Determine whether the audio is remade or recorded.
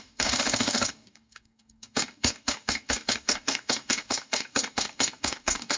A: remade